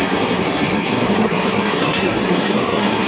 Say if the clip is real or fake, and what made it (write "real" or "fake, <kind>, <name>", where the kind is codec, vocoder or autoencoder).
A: fake, codec, SNAC